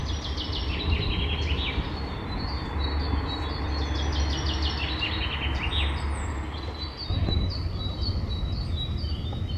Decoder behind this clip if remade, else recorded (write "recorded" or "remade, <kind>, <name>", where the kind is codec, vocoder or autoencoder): recorded